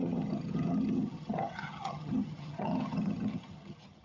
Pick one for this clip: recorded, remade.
remade